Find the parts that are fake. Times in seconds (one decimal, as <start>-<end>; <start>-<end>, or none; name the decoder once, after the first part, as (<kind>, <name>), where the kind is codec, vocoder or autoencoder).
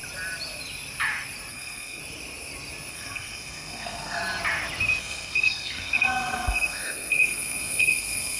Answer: 1.5-2.0 (codec, SNAC); 2.9-4.2; 5.0-8.4